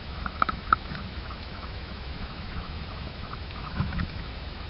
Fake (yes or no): yes